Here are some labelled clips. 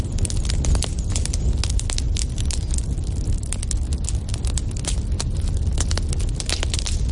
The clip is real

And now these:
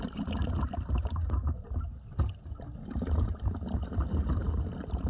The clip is real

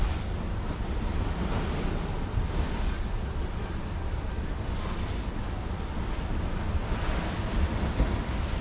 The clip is real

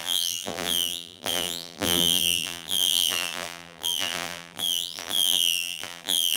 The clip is fake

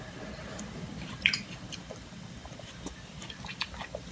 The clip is fake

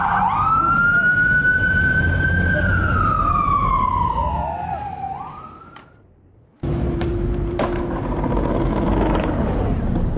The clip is fake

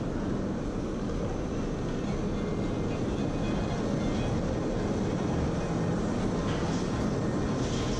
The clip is real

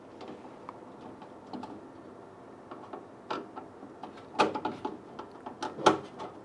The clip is real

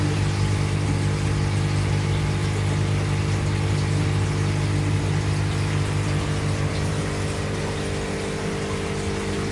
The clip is real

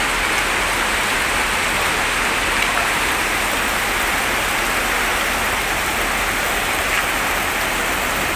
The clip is real